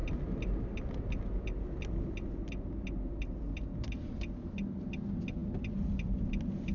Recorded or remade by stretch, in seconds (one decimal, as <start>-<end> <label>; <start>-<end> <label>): 0.0-6.7 recorded